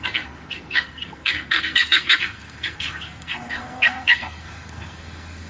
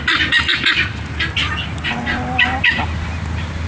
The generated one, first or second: first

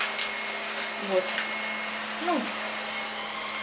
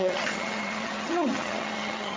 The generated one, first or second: second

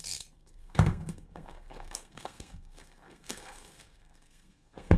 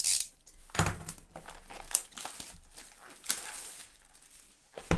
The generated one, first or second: first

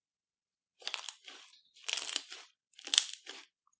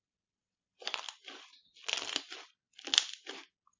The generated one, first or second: first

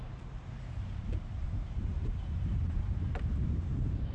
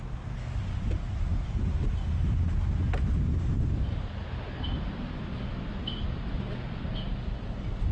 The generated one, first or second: first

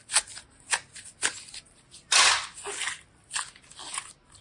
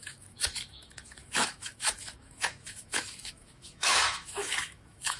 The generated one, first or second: second